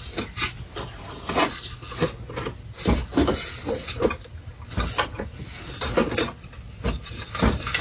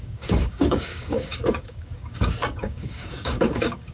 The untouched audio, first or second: first